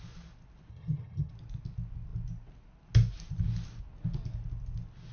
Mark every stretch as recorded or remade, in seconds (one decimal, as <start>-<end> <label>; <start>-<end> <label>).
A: 0.0-0.7 recorded; 0.7-1.3 remade; 1.3-5.1 recorded